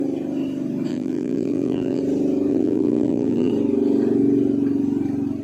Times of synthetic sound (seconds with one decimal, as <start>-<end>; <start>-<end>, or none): 0.9-2.0; 2.5-3.5